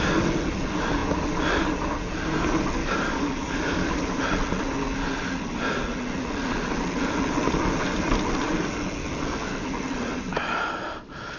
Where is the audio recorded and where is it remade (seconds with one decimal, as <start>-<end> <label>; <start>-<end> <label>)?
0.0-2.8 recorded; 2.8-4.2 remade; 4.2-11.4 recorded

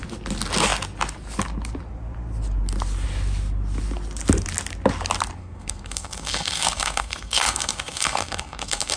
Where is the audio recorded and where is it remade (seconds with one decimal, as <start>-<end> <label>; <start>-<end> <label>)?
0.0-5.4 recorded; 5.4-9.0 remade

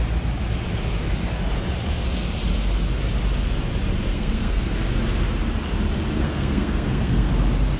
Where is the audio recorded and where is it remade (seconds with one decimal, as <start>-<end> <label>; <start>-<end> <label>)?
0.0-4.1 recorded; 4.1-4.7 remade; 4.7-6.2 recorded; 6.2-7.3 remade; 7.3-7.8 recorded